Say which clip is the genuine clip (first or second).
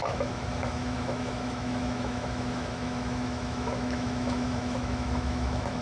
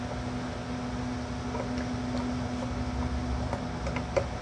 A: second